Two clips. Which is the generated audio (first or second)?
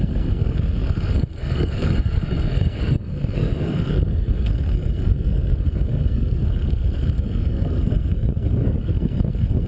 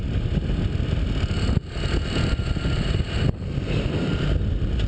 first